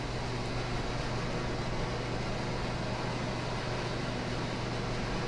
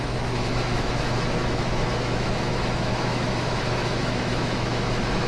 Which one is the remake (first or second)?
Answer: second